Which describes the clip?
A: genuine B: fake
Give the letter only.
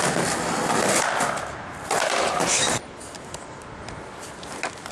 A